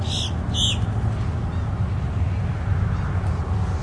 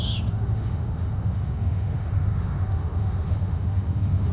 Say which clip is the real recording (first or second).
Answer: first